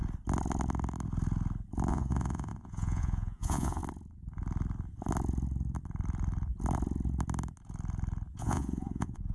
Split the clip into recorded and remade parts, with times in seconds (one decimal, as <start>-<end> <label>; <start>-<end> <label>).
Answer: 0.0-1.9 recorded; 1.9-3.8 remade; 3.8-8.4 recorded; 8.4-9.3 remade